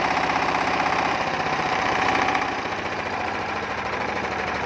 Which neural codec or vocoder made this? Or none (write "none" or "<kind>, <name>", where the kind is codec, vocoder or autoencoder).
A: vocoder, BigVGAN v2